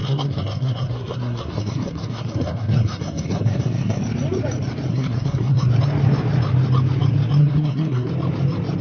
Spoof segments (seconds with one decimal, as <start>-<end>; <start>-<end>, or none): 0.0-4.0; 4.9-5.7; 7.4-8.1